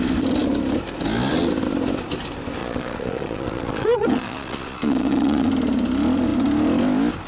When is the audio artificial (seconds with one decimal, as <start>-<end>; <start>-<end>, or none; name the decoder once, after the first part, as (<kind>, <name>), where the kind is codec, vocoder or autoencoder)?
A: 2.6-5.5 (vocoder, Vocos)